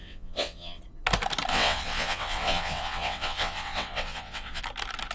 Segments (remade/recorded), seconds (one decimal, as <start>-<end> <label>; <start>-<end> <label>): 0.0-0.8 remade; 0.8-1.5 recorded; 1.5-4.6 remade; 4.6-5.1 recorded